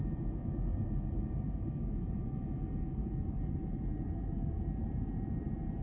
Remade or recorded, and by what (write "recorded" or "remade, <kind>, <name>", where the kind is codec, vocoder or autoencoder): remade, vocoder, BigVGAN v2